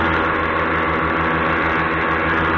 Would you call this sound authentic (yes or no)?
yes